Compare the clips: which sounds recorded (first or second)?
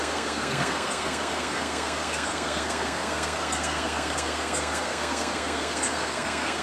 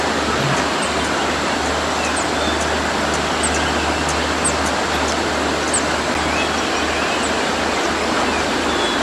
second